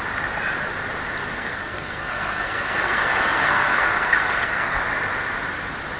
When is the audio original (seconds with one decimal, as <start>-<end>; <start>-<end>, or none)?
0.0-1.2; 4.8-6.0